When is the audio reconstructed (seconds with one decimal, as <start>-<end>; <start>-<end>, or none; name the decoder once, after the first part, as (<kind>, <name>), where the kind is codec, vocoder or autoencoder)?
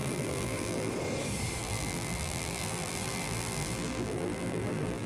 0.0-0.9 (vocoder, BigVGAN v2); 1.6-5.1